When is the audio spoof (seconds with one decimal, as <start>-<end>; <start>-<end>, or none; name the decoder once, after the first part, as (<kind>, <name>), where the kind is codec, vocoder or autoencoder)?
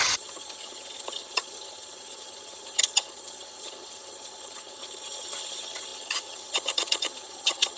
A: 0.0-7.8 (vocoder, HiFi-GAN)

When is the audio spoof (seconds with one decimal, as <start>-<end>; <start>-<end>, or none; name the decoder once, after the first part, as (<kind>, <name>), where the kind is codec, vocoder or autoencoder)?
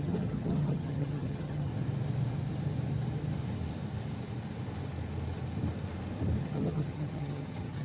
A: 0.0-1.7 (vocoder, HiFi-GAN); 6.4-7.8